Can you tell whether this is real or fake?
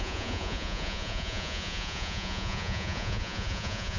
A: fake